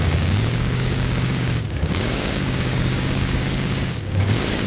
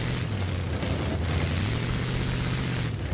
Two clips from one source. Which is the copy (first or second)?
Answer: first